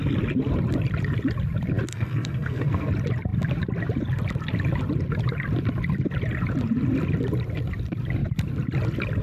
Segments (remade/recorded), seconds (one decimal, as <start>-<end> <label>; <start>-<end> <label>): 0.0-1.9 recorded; 1.9-2.9 remade; 2.9-9.2 recorded